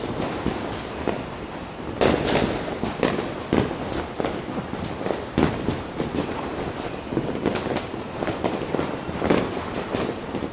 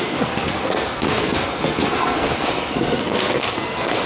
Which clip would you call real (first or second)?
first